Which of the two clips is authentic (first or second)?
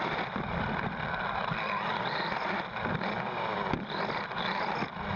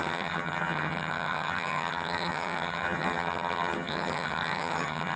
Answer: first